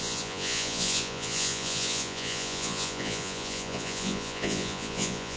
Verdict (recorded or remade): remade